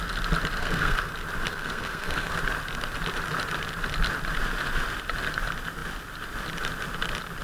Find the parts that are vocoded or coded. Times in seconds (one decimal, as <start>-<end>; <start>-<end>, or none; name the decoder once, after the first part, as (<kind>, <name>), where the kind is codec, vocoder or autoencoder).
0.6-1.1 (codec, SNAC); 1.5-2.4